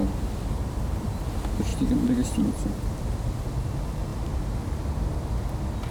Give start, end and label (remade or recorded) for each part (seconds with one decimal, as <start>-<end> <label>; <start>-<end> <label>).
0.0-1.1 remade; 1.1-1.7 recorded; 1.7-3.3 remade; 3.3-5.9 recorded